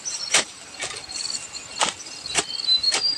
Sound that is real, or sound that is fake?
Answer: real